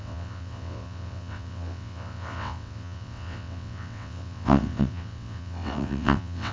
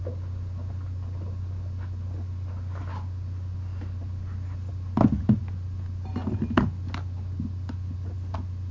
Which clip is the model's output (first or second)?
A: first